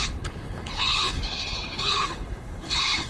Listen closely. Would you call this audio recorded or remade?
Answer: remade